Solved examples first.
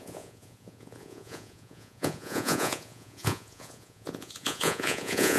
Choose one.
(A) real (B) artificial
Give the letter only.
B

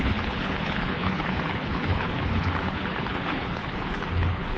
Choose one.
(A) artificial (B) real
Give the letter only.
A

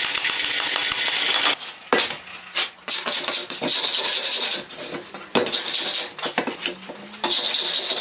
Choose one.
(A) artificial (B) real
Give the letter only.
B